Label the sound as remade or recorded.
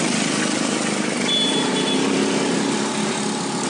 recorded